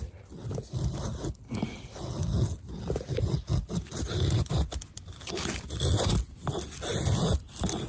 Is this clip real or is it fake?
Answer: real